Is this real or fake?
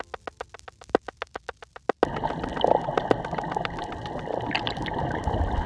real